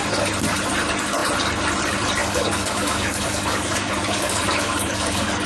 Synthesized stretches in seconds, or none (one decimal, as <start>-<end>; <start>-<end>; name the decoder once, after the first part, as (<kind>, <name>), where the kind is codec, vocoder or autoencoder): 2.2-5.5 (codec, DAC)